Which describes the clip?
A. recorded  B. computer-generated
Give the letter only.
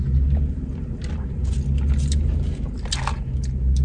A